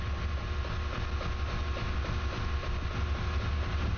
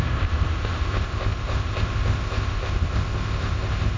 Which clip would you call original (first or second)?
first